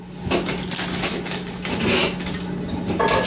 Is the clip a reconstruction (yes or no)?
no